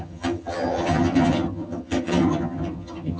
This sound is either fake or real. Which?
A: fake